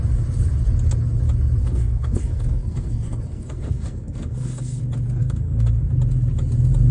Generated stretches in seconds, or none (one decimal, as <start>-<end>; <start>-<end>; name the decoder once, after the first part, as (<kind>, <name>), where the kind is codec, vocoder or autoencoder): 1.6-4.8 (codec, SNAC); 5.2-5.8